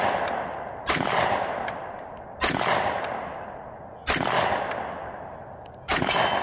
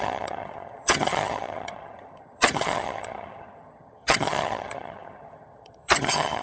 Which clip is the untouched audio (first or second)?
first